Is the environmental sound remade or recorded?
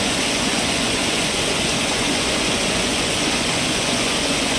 remade